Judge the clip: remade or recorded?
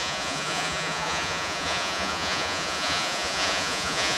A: remade